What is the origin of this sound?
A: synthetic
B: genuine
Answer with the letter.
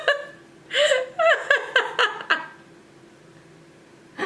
B